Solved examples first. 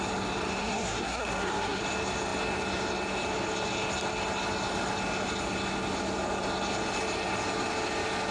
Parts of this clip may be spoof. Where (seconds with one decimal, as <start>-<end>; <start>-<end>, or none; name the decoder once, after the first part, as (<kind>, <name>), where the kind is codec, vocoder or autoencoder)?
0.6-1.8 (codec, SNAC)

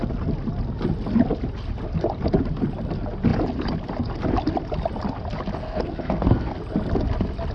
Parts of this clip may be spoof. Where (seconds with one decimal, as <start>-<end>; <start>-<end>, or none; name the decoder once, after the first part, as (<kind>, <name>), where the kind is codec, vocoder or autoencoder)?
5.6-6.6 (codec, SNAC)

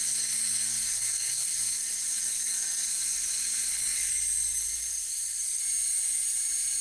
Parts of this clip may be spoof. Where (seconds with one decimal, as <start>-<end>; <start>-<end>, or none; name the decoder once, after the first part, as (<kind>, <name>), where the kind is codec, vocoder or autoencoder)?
0.0-4.1 (codec, SNAC); 4.9-5.6

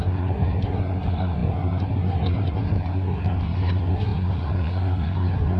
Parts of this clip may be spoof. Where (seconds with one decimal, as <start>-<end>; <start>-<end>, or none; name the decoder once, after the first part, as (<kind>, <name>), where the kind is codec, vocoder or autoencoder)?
0.0-5.6 (codec, SNAC)

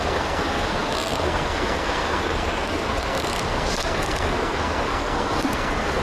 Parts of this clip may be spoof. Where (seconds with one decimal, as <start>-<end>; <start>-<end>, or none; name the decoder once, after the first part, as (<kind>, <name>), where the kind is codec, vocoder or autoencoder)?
0.0-6.0 (codec, SNAC)